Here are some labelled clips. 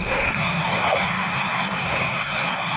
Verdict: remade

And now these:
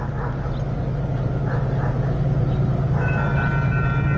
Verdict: recorded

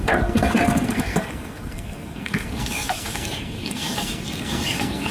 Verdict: remade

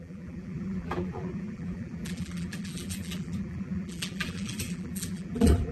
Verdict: remade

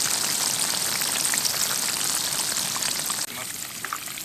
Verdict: recorded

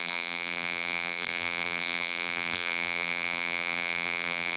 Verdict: remade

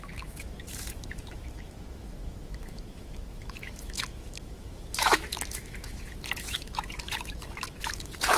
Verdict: remade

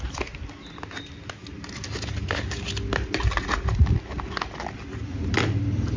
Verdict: recorded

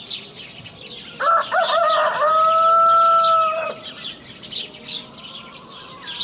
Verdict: recorded